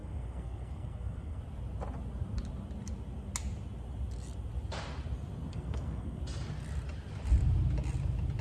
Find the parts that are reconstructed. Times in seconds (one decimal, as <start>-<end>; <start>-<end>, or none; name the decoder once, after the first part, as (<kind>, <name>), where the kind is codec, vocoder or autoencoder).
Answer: 0.0-1.4 (codec, SNAC); 5.5-6.2